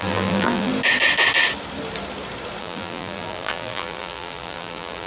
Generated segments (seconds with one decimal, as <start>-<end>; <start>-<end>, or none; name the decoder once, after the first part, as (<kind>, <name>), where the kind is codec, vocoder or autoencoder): 0.0-0.7 (vocoder, BigVGAN v2); 2.6-5.1